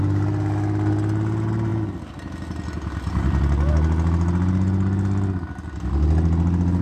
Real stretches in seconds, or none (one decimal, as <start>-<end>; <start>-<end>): 0.0-6.8